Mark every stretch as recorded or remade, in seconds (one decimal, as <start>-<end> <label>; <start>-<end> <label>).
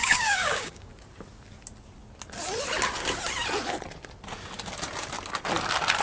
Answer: 0.0-0.9 remade; 0.9-6.0 recorded